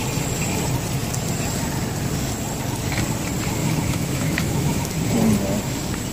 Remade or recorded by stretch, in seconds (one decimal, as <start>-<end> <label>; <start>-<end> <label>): 0.0-3.6 recorded; 3.6-4.9 remade; 4.9-6.1 recorded